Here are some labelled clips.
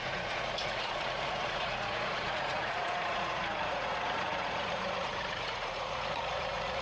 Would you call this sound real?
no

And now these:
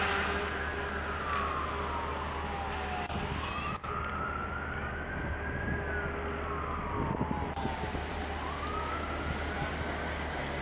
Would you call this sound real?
yes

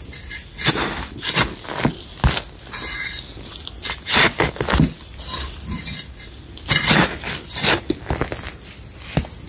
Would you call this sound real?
yes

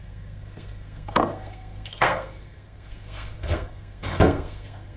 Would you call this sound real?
no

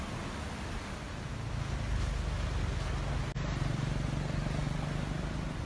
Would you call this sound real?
yes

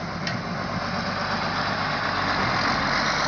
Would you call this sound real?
yes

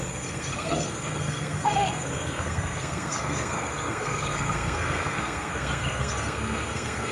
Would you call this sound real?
no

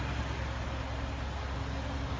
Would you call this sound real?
yes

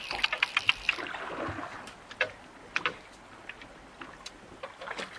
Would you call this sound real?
yes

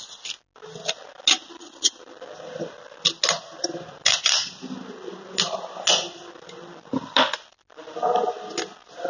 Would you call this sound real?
yes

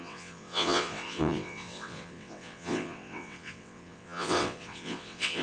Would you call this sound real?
no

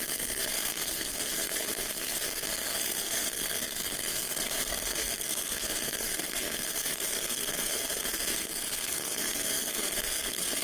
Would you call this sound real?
no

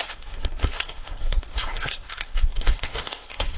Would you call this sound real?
no